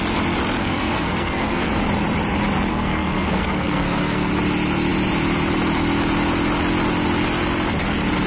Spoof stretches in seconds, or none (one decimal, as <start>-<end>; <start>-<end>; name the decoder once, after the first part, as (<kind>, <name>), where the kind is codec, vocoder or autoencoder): 0.6-1.7 (codec, SNAC); 2.7-4.3